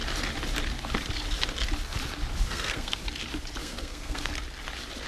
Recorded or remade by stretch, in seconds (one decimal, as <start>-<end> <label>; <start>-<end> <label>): 0.0-2.5 recorded; 2.5-3.0 remade; 3.0-3.6 recorded; 3.6-4.3 remade; 4.3-5.1 recorded